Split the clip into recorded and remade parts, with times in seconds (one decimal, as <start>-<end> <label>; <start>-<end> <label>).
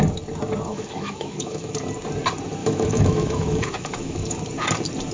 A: 0.0-0.7 recorded; 0.7-1.7 remade; 1.7-2.6 recorded; 2.6-4.4 remade; 4.4-5.1 recorded